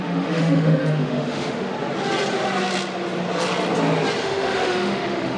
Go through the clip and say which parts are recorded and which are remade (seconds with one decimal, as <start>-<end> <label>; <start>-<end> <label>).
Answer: 0.0-1.7 remade; 1.7-4.2 recorded; 4.2-5.4 remade